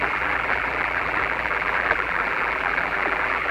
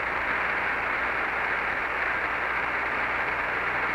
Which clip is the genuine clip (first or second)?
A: second